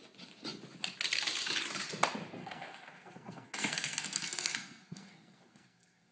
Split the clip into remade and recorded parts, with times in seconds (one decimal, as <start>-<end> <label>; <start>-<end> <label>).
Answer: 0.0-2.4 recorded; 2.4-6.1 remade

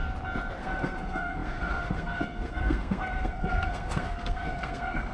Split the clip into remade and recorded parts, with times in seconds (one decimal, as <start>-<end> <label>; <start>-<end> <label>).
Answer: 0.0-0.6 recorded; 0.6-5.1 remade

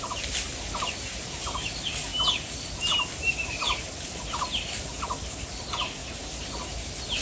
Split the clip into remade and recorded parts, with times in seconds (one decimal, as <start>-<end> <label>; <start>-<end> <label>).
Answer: 0.0-7.2 recorded

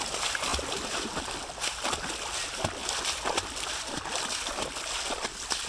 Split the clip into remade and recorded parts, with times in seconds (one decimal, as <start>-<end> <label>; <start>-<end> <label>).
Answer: 0.0-5.7 recorded

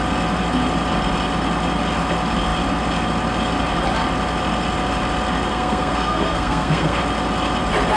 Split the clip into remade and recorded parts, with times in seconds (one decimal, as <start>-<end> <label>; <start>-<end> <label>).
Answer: 0.0-5.5 recorded; 5.5-7.0 remade; 7.0-8.0 recorded

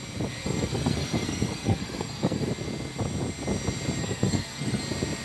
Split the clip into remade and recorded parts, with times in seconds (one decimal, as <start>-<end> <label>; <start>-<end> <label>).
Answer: 0.0-0.4 recorded; 0.4-2.5 remade; 2.5-4.0 recorded; 4.0-4.8 remade; 4.8-5.2 recorded

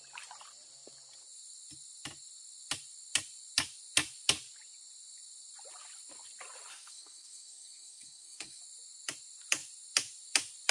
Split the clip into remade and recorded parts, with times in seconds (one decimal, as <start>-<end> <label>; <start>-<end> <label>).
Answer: 0.0-6.7 recorded; 6.7-8.6 remade; 8.6-10.7 recorded

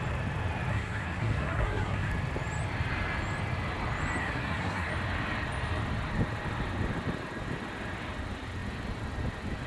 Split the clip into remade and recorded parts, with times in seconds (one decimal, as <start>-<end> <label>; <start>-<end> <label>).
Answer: 0.0-0.7 recorded; 0.7-2.1 remade; 2.1-4.2 recorded; 4.2-4.9 remade; 4.9-9.7 recorded